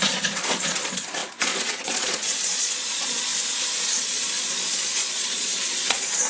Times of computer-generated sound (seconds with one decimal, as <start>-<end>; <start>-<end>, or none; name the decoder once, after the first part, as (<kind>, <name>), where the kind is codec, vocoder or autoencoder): 0.0-3.3 (vocoder, Vocos); 4.0-6.3